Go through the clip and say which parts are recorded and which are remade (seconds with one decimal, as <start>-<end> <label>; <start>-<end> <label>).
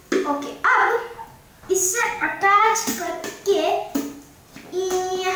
0.0-1.9 recorded; 1.9-3.1 remade; 3.1-5.4 recorded